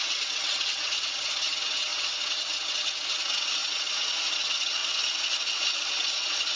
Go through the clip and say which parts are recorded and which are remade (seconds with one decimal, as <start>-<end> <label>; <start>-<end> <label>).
0.0-6.6 remade